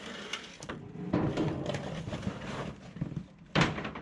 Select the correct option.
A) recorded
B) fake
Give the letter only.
B